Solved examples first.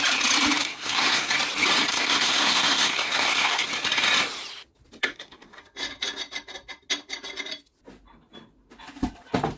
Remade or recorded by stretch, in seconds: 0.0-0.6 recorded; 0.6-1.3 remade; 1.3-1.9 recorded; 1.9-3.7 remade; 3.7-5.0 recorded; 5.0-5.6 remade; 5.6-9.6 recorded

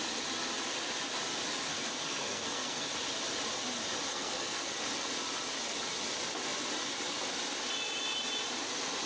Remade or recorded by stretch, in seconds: 0.0-1.7 recorded; 1.7-2.9 remade; 2.9-4.1 recorded; 4.1-4.7 remade; 4.7-9.1 recorded

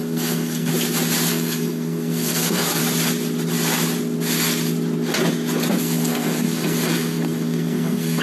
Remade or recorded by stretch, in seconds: 0.0-0.7 remade; 0.7-1.3 recorded; 1.3-2.8 remade; 2.8-5.8 recorded; 5.8-8.2 remade

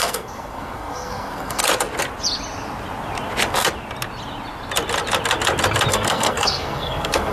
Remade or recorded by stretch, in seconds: 0.0-1.6 remade; 1.6-5.9 recorded; 5.9-7.3 remade

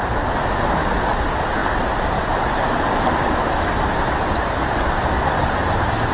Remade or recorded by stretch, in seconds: 0.0-6.1 recorded

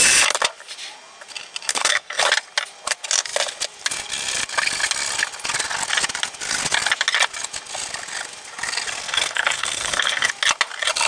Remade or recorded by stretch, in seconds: 0.0-1.7 recorded; 1.7-2.2 remade; 2.2-9.0 recorded; 9.0-10.3 remade; 10.3-11.1 recorded

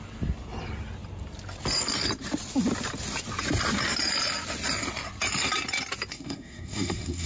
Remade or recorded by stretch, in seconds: 0.0-6.1 recorded; 6.1-7.3 remade